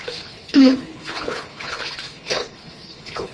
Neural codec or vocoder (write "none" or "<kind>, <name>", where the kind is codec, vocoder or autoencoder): codec, HILCodec